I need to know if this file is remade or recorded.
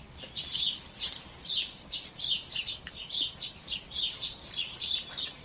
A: remade